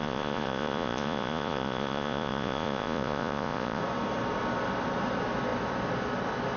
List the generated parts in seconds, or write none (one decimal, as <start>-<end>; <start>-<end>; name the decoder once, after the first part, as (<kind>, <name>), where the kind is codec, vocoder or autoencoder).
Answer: 0.0-3.8 (vocoder, Vocos)